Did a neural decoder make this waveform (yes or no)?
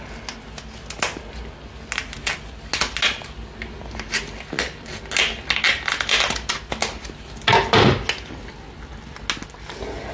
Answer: no